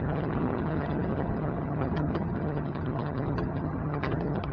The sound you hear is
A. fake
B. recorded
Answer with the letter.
A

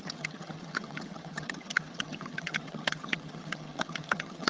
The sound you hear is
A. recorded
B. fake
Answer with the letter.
B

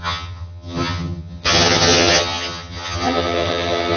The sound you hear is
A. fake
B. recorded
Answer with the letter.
A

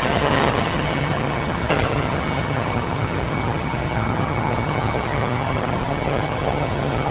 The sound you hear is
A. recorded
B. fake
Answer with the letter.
B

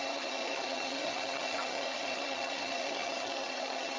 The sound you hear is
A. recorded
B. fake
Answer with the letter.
B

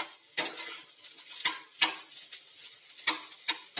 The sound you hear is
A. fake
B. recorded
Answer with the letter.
B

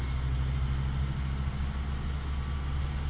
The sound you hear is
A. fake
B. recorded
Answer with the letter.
B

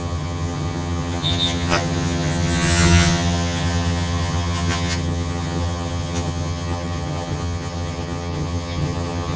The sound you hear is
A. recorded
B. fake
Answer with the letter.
B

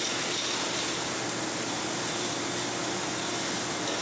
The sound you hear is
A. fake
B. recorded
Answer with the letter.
B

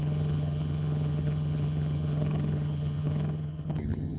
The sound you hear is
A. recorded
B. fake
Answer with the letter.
B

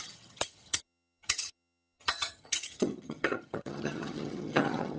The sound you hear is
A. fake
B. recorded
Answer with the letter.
A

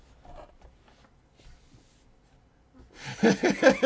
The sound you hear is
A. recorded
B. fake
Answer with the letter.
A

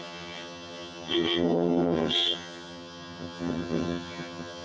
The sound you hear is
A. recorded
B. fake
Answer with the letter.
B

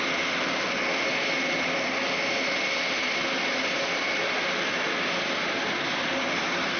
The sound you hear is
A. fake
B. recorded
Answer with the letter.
B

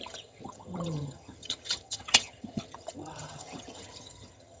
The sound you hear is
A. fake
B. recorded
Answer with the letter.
A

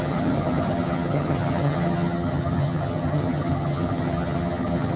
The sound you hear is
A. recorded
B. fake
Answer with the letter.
B